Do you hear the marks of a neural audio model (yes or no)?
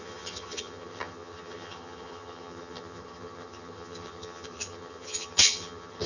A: yes